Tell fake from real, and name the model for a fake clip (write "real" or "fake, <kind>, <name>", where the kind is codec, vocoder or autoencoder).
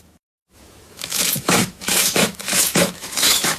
fake, autoencoder, DAC-VAE